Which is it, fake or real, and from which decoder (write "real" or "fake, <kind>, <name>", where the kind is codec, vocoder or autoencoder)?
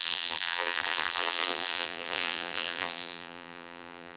fake, vocoder, BigVGAN v2